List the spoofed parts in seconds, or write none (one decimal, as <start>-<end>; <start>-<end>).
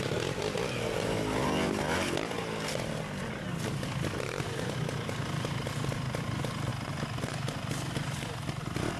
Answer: none